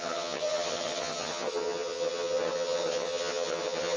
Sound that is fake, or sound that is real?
fake